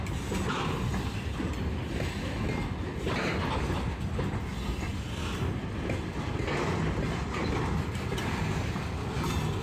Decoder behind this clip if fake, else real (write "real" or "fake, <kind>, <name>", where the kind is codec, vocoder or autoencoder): real